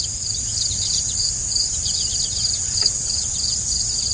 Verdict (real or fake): fake